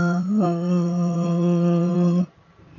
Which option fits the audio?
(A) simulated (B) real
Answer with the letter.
A